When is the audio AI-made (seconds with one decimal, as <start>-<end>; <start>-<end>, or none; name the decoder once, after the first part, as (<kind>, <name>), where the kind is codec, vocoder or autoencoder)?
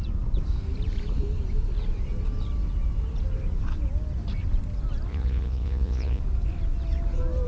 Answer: 5.1-6.2 (vocoder, Vocos)